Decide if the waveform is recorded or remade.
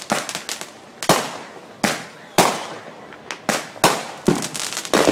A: recorded